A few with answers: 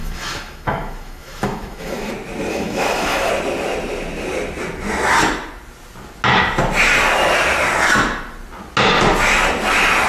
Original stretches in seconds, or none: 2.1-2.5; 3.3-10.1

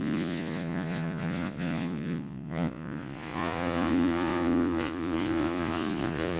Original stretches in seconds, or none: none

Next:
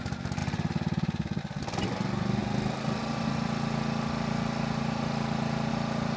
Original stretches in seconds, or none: 0.0-6.2

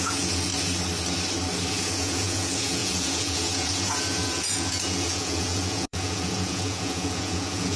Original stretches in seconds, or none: 0.5-1.7